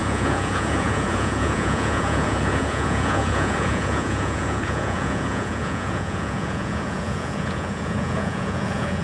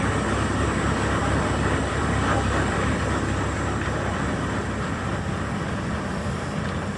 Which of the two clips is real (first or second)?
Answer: second